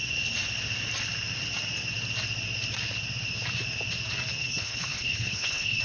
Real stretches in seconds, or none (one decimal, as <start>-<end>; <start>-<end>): 0.0-4.4